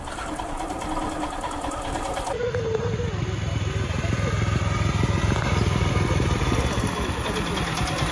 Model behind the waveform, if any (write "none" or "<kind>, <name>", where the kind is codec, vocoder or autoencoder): none